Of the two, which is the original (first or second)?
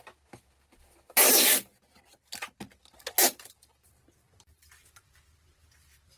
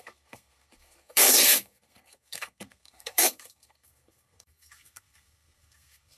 first